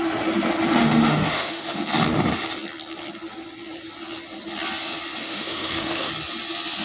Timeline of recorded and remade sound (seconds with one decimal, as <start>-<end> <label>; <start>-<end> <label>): 0.0-0.8 recorded; 0.8-1.8 remade; 1.8-5.2 recorded; 5.2-6.1 remade; 6.1-6.8 recorded